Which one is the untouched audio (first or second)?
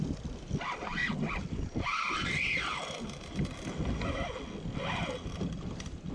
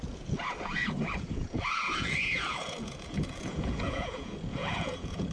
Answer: first